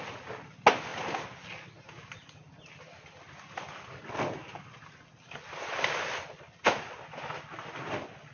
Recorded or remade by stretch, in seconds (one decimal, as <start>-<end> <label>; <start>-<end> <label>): 0.0-8.3 recorded